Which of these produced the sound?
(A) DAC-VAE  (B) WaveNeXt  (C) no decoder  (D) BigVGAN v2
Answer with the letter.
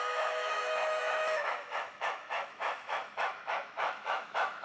A